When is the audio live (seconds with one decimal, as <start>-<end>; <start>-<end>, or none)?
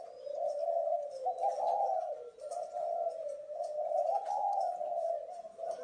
0.0-5.8